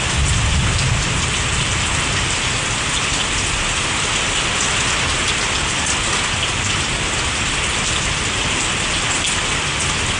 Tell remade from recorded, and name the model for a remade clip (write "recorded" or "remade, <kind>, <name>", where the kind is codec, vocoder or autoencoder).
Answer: recorded